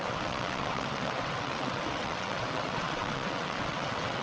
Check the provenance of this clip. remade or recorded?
remade